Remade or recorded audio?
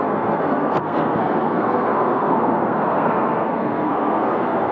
remade